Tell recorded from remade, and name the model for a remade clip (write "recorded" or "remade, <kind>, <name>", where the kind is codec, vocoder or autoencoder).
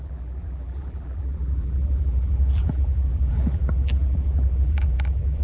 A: remade, vocoder, BigVGAN v2